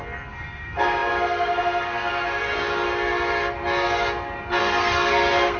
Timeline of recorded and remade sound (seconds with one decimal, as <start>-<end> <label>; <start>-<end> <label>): 0.0-2.1 remade; 2.1-4.6 recorded; 4.6-5.6 remade